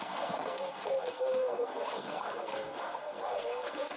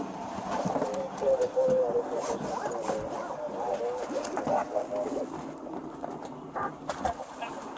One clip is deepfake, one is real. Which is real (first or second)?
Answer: second